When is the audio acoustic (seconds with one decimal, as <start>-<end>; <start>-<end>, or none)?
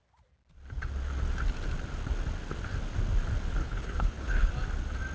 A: 0.0-3.6; 4.5-5.1